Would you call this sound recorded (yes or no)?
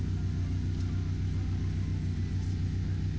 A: yes